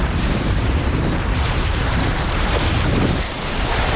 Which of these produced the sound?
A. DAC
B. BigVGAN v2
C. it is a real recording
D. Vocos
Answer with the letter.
B